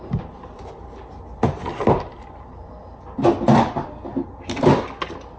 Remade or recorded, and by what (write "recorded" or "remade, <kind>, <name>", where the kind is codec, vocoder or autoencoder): recorded